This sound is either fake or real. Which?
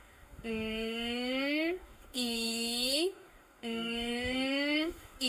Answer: fake